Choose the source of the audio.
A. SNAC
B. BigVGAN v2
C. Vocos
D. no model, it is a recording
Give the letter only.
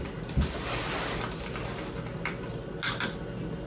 D